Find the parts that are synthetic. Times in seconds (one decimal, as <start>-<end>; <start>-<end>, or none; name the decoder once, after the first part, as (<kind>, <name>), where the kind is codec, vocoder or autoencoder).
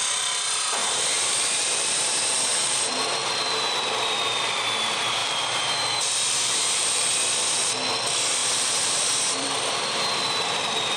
0.8-3.0 (vocoder, BigVGAN v2); 5.2-7.1; 8.4-9.7